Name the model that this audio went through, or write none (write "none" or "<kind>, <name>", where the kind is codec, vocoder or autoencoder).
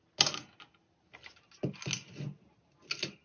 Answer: none